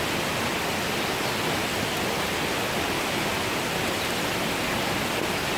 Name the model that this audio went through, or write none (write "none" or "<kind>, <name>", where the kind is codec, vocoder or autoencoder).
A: none